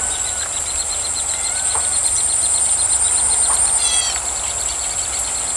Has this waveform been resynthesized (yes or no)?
yes